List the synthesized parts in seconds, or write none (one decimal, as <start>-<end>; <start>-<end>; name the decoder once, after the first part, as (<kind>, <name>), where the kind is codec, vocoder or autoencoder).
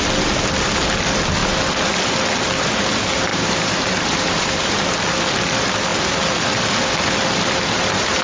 3.3-4.9 (vocoder, BigVGAN v2)